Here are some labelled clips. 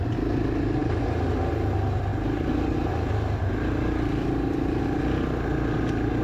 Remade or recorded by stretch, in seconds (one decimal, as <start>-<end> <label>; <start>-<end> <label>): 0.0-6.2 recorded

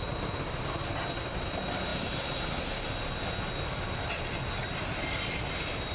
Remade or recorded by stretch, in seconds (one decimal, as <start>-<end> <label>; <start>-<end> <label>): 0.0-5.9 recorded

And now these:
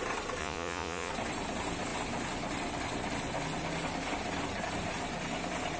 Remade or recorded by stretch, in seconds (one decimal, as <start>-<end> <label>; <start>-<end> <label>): 0.0-0.4 recorded; 0.4-1.1 remade; 1.1-5.8 recorded

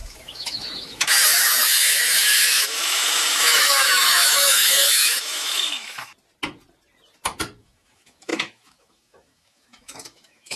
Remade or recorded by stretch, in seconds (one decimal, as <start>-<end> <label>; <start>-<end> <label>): 0.0-6.1 remade; 6.1-7.6 recorded; 7.6-10.6 remade

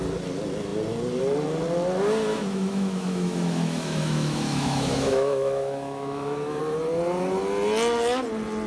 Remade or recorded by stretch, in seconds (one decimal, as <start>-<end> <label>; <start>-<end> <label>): 0.0-2.3 recorded; 2.3-6.6 remade; 6.6-8.7 recorded